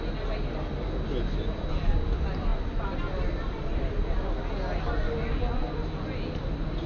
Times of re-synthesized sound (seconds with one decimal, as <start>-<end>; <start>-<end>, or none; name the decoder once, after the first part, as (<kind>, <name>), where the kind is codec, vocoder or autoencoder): none